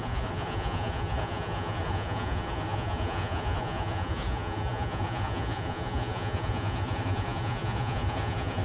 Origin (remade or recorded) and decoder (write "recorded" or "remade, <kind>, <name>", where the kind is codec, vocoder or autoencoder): remade, vocoder, Vocos